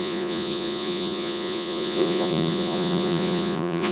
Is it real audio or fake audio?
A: fake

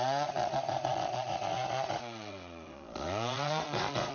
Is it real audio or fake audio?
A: fake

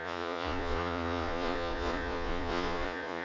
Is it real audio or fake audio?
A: fake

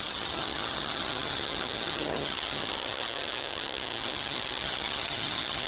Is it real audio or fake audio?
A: fake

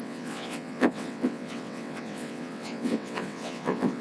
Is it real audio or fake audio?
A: fake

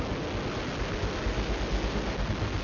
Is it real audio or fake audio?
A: real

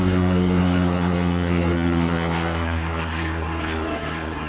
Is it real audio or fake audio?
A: fake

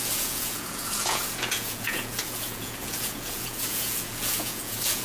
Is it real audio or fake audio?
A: fake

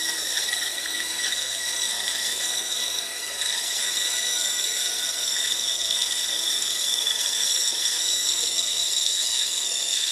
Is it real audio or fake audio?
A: fake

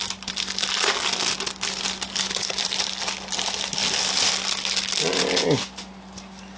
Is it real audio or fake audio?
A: real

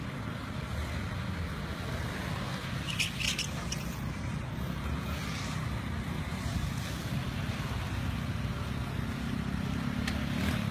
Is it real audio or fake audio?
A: real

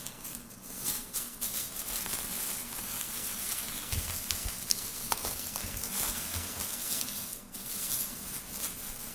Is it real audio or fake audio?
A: fake